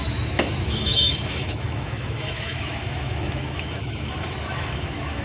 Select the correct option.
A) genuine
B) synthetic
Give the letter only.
B